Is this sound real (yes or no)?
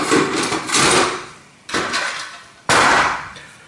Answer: no